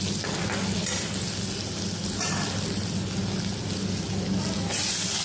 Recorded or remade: recorded